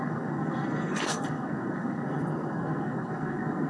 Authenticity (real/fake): fake